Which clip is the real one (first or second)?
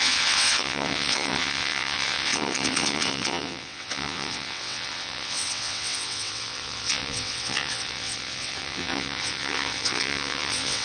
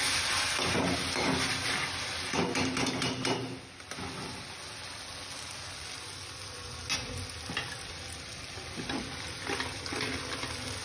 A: second